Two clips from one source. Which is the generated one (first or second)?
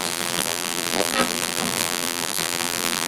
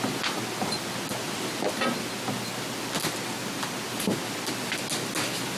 first